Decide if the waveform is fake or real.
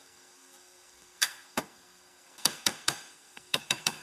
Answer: fake